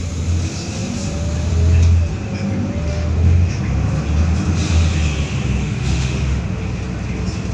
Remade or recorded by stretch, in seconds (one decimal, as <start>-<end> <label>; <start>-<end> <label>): 0.0-2.9 recorded; 2.9-3.5 remade; 3.5-5.6 recorded; 5.6-6.4 remade; 6.4-7.5 recorded